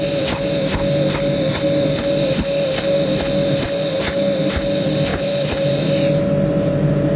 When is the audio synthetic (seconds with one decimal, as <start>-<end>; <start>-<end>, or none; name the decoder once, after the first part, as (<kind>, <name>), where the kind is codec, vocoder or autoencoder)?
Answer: 5.1-5.8 (vocoder, BigVGAN v2)